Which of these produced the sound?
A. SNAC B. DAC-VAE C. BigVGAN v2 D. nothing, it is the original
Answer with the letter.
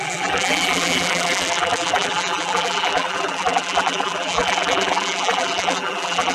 C